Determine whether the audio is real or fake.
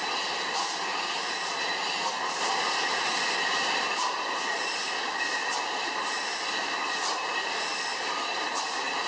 real